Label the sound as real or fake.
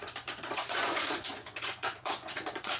fake